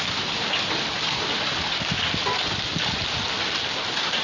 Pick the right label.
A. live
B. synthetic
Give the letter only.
A